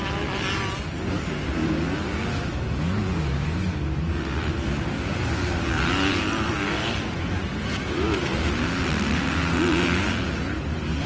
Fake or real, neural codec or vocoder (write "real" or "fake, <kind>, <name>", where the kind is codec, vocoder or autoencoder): real